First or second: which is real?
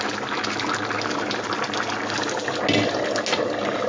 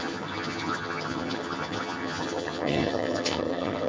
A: first